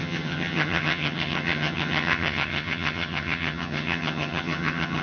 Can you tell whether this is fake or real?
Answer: fake